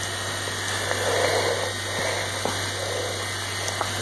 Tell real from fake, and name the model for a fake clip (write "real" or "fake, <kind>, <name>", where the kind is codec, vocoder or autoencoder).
fake, vocoder, BigVGAN v2